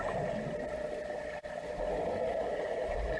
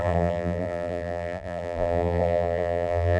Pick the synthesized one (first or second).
second